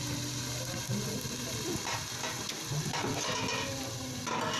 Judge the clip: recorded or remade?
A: recorded